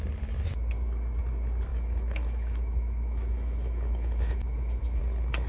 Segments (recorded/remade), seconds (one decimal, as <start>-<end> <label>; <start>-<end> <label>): 0.0-1.7 recorded; 1.7-5.0 remade; 5.0-5.5 recorded